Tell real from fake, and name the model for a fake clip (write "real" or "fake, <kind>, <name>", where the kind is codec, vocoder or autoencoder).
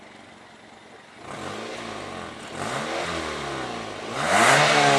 real